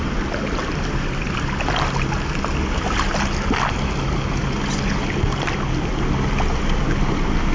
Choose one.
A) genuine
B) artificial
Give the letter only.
A